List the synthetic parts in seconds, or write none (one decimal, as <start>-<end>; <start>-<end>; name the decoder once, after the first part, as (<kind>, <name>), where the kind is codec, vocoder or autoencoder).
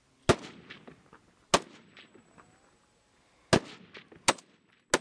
none